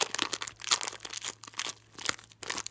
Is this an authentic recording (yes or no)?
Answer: yes